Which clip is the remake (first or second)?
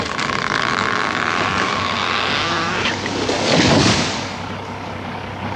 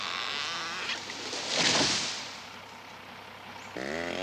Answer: first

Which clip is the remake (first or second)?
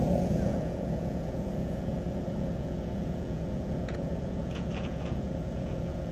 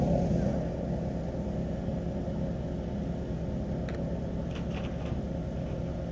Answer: first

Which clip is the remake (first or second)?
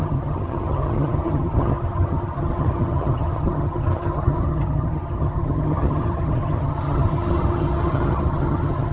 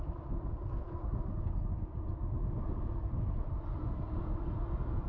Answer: first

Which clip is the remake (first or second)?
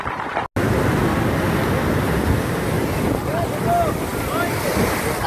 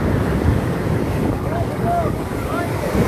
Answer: second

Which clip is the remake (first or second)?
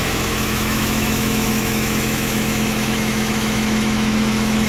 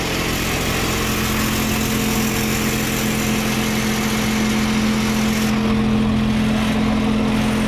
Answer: first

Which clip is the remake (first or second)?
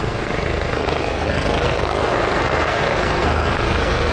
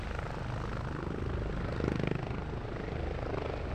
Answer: first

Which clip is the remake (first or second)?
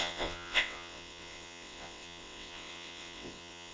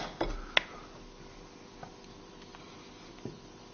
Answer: first